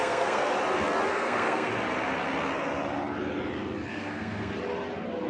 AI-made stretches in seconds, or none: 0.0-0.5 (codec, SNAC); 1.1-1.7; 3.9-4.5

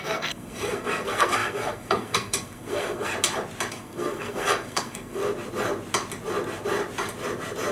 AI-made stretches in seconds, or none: 0.0-3.1 (codec, SNAC); 3.7-5.2

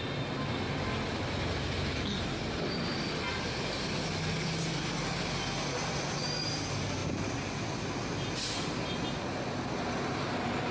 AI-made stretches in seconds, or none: none

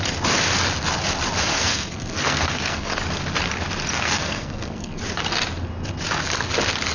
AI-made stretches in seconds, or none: 1.5-2.9 (codec, SNAC); 3.9-5.0

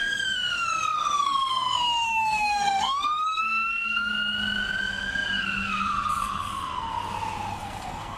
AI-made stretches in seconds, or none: 0.0-4.1 (codec, SNAC); 4.8-7.0; 7.5-8.2

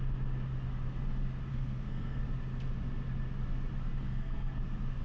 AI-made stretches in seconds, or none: 1.5-2.2 (codec, SNAC); 4.0-4.6

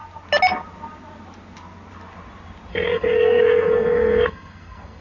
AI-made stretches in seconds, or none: 2.7-5.0 (codec, SNAC)

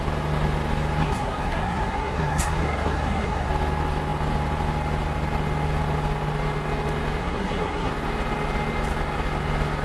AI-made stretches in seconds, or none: 1.0-3.5 (codec, SNAC); 7.2-7.9